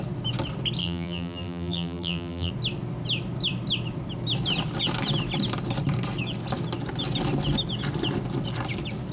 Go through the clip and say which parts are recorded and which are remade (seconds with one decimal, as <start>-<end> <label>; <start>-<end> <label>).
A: 0.0-0.8 recorded; 0.8-2.5 remade; 2.5-9.1 recorded